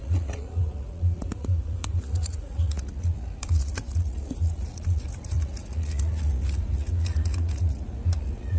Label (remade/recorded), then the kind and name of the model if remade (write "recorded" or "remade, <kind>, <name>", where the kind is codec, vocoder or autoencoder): remade, vocoder, Vocos